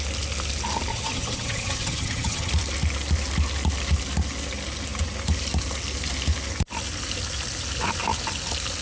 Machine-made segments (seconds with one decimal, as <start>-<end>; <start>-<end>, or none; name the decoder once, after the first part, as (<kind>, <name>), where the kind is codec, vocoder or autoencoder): 0.9-2.5 (vocoder, HiFi-GAN)